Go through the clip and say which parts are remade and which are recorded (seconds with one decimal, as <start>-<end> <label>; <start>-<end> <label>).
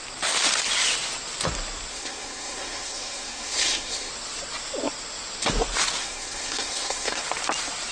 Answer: 0.0-1.9 recorded; 1.9-4.1 remade; 4.1-6.0 recorded; 6.0-7.2 remade; 7.2-7.9 recorded